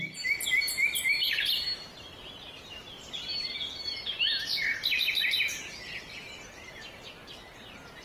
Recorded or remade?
recorded